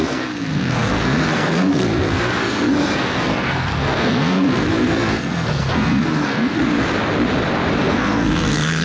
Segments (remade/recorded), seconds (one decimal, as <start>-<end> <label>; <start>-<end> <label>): 0.0-6.6 remade; 6.6-7.8 recorded; 7.8-8.8 remade